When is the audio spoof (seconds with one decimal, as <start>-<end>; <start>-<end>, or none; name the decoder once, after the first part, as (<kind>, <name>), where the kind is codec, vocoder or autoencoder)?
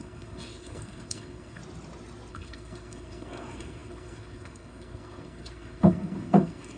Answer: 0.0-1.6 (codec, SNAC); 2.3-6.8